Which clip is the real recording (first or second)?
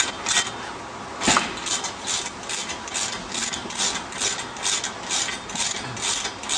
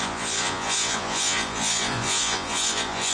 first